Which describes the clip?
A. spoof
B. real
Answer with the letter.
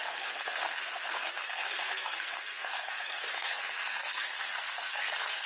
A